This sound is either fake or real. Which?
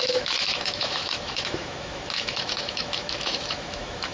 fake